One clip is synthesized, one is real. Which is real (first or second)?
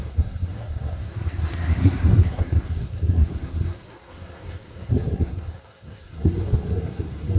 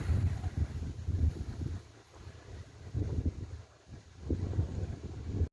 second